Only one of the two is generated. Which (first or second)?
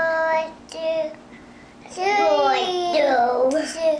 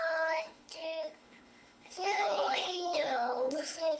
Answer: second